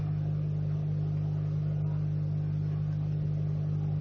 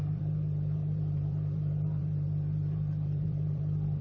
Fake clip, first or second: second